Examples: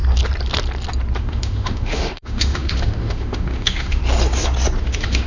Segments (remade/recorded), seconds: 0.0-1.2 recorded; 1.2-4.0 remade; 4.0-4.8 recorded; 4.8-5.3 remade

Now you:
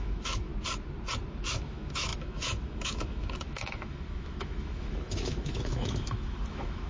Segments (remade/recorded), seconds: 0.0-0.5 remade; 0.5-1.3 recorded; 1.3-6.9 remade

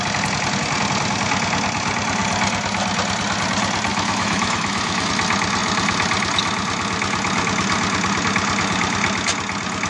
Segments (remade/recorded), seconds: 0.0-3.9 recorded; 3.9-5.1 remade; 5.1-9.9 recorded

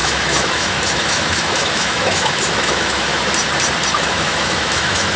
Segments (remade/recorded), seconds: 0.0-3.1 remade; 3.1-4.0 recorded; 4.0-5.2 remade

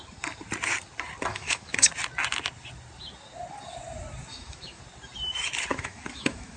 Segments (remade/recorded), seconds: 0.0-1.3 recorded; 1.3-1.9 remade; 1.9-4.3 recorded; 4.3-4.8 remade; 4.8-5.7 recorded; 5.7-6.6 remade